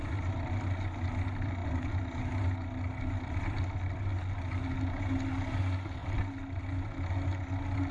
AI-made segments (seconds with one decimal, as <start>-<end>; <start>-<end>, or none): none